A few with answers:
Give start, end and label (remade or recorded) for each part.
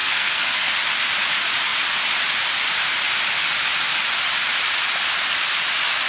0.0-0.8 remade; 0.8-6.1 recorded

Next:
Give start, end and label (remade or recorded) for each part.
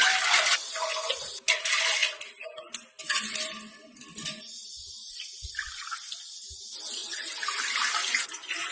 0.0-8.7 recorded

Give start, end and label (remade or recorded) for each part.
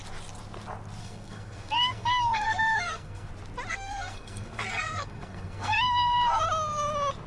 0.0-1.0 recorded; 1.0-3.3 remade; 3.3-3.7 recorded; 3.7-6.4 remade; 6.4-7.3 recorded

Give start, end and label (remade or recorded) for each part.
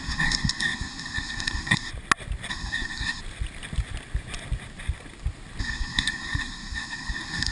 0.0-1.9 remade; 1.9-2.5 recorded; 2.5-3.2 remade; 3.2-5.6 recorded; 5.6-7.5 remade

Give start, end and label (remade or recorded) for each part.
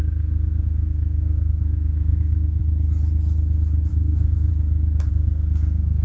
0.0-2.6 remade; 2.6-3.9 recorded; 3.9-4.5 remade; 4.5-5.1 recorded; 5.1-6.0 remade